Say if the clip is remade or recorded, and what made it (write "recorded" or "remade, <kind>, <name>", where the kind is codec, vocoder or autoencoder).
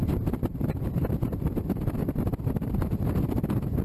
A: recorded